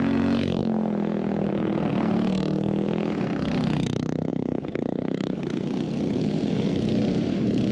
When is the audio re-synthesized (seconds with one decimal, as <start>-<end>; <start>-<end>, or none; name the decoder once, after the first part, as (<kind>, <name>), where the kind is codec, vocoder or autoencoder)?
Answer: 0.0-7.7 (codec, SNAC)